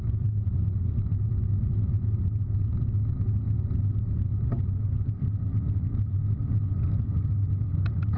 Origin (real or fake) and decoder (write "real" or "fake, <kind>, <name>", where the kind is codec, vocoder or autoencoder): real